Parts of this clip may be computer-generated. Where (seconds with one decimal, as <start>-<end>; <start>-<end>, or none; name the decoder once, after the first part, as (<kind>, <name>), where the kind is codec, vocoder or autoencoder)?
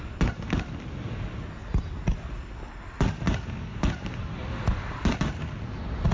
none